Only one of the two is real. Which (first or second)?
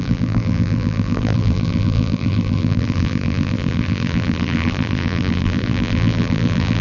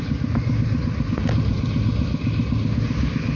second